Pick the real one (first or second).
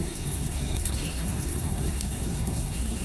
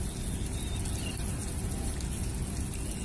second